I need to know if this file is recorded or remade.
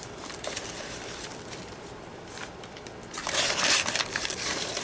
remade